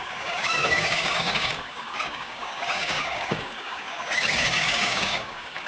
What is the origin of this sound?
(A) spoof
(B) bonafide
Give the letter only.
A